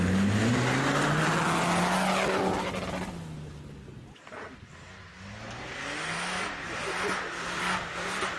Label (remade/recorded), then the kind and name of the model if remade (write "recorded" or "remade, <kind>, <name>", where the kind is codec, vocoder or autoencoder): recorded